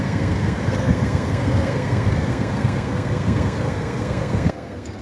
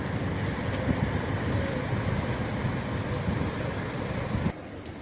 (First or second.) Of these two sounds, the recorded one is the second